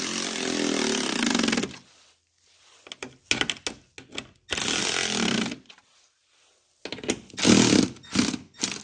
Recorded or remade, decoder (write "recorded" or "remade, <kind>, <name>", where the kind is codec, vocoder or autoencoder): recorded